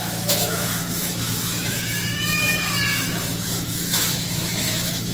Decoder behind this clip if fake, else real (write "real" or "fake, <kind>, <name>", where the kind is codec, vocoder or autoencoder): fake, autoencoder, DAC-VAE